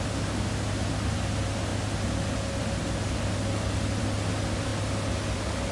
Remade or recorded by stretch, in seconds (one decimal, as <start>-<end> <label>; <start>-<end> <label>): 0.0-5.7 recorded